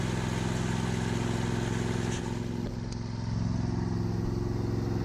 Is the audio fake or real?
real